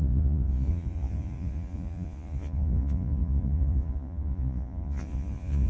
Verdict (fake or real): fake